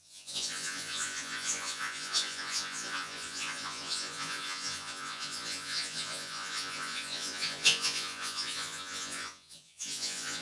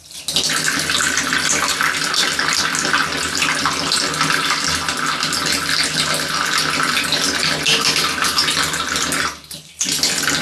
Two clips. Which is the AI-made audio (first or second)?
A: first